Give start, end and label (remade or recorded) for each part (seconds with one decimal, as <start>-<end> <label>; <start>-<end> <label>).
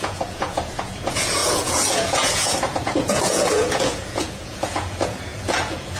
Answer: 0.0-6.0 remade